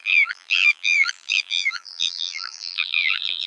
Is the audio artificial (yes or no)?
yes